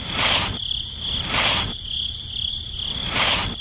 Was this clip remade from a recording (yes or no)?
no